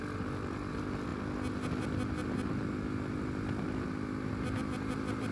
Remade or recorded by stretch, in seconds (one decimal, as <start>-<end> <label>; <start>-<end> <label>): 0.0-1.1 remade; 1.1-4.3 recorded; 4.3-5.3 remade